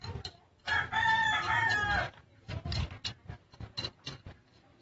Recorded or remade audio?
remade